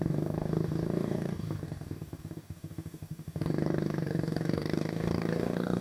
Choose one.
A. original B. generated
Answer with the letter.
B